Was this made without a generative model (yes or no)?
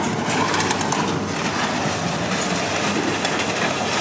yes